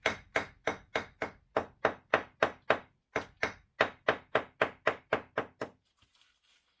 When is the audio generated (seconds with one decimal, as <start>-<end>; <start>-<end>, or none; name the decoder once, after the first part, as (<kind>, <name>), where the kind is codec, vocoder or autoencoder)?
none